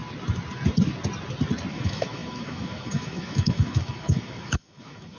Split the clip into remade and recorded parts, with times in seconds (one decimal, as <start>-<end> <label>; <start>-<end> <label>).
0.0-1.7 recorded; 1.7-5.2 remade